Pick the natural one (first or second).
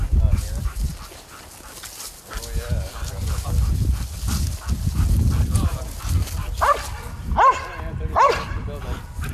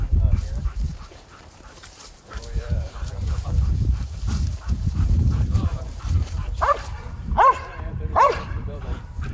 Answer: first